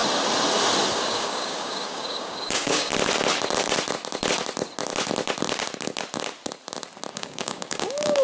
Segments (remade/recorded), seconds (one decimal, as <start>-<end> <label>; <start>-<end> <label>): 0.0-0.9 recorded; 0.9-2.9 remade; 2.9-7.1 recorded; 7.1-8.2 remade